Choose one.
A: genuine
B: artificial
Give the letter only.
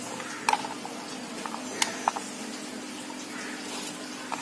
A